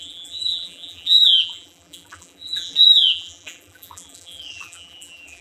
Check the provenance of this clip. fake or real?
fake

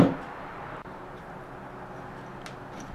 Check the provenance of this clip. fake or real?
real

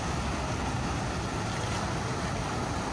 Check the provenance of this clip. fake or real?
real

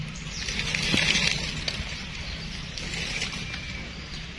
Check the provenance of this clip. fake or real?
real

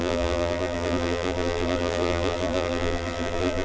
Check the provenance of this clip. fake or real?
fake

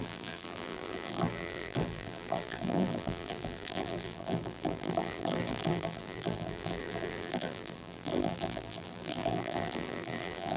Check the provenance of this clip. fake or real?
fake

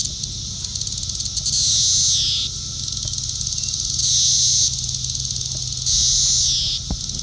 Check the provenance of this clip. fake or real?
real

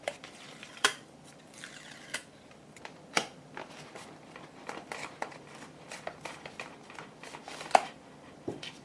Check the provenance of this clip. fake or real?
fake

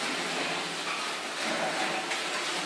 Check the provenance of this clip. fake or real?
real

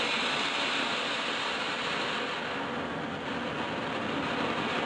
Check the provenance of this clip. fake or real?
real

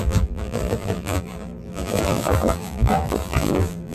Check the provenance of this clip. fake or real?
fake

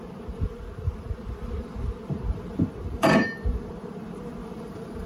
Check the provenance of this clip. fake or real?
fake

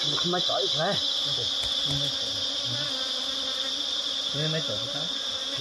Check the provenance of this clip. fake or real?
real